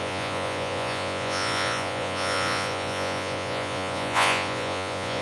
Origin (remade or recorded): remade